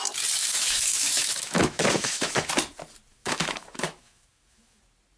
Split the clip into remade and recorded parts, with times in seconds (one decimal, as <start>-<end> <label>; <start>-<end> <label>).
0.0-0.4 recorded; 0.4-2.5 remade; 2.5-3.1 recorded; 3.1-4.8 remade; 4.8-5.2 recorded